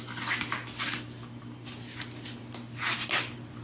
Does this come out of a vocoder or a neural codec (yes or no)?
no